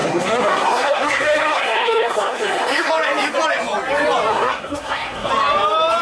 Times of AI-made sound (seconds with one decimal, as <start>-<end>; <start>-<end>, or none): 0.0-2.9; 4.3-5.3